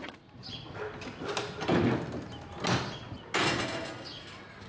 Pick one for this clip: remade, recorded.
recorded